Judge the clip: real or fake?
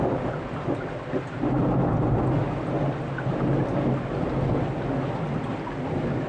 real